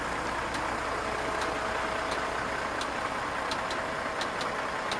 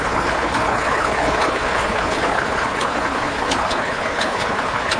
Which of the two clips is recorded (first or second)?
first